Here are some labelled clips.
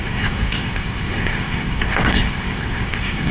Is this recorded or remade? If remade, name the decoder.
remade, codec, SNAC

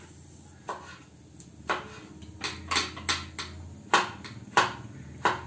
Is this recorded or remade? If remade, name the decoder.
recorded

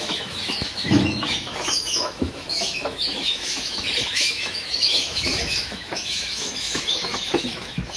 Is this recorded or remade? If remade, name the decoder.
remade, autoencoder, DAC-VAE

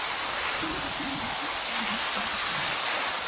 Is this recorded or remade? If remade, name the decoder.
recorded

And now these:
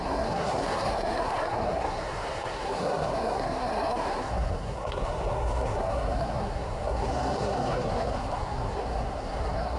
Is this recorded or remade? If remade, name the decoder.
remade, codec, SNAC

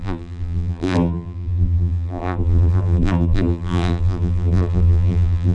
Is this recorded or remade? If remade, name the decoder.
remade, vocoder, BigVGAN v2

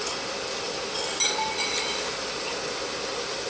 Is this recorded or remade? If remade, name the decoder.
recorded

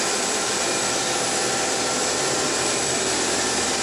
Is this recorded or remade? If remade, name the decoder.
recorded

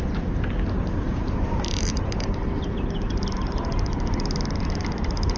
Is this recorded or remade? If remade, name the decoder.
recorded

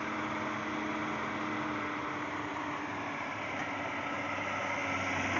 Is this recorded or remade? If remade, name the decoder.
recorded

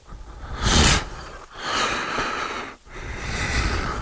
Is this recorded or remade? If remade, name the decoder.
remade, vocoder, Vocos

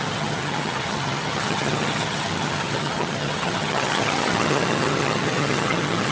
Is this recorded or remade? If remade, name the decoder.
remade, vocoder, HiFi-GAN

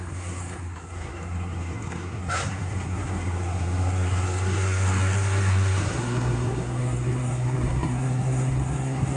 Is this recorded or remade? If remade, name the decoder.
remade, codec, SNAC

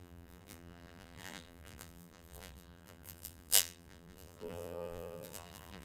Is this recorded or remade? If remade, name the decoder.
remade, vocoder, BigVGAN v2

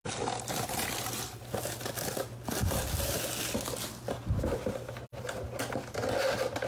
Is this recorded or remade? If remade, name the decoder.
recorded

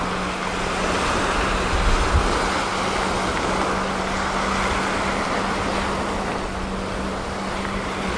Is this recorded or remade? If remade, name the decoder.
recorded